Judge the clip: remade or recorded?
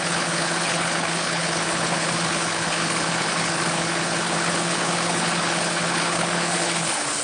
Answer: remade